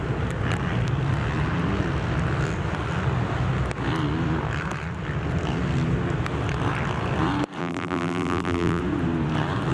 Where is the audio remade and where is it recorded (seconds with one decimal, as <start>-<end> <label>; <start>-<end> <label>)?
0.0-7.6 recorded; 7.6-8.8 remade; 8.8-9.7 recorded